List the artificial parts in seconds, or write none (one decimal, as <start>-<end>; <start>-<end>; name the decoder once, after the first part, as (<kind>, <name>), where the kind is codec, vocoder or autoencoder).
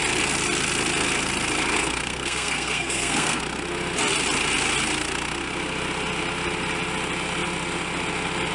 1.7-3.4 (codec, SNAC)